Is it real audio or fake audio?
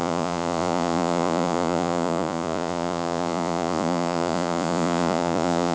fake